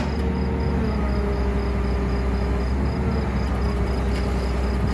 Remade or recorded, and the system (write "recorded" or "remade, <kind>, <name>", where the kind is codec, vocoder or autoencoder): recorded